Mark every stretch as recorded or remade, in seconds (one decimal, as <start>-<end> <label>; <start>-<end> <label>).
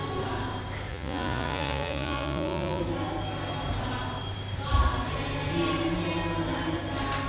0.0-0.9 recorded; 0.9-2.8 remade; 2.8-7.3 recorded